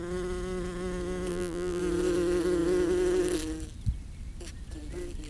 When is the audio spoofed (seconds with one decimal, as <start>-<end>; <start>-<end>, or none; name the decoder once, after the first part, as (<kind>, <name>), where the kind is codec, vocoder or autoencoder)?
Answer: 1.3-1.8 (vocoder, BigVGAN v2)